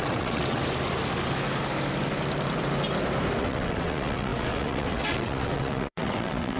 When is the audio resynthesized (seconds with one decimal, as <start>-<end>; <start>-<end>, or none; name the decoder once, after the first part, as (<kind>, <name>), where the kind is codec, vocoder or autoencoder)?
0.0-0.6 (vocoder, WaveNeXt); 3.4-6.6